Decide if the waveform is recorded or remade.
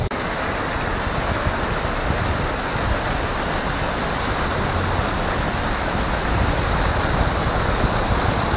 recorded